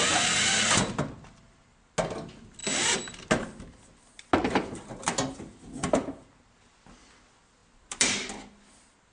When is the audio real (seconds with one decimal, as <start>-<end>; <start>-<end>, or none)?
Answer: 0.0-7.6; 8.5-9.1